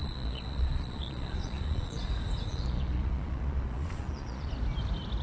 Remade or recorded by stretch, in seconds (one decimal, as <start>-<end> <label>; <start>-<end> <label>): 0.0-2.1 remade; 2.1-2.5 recorded; 2.5-4.5 remade; 4.5-5.2 recorded